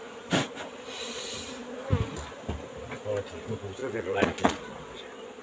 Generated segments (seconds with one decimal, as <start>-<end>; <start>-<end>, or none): 3.8-5.4